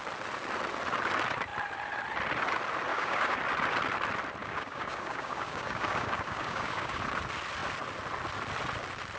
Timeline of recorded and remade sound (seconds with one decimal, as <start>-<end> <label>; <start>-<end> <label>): 0.0-2.9 recorded; 2.9-3.4 remade; 3.4-4.4 recorded; 4.4-7.0 remade; 7.0-9.2 recorded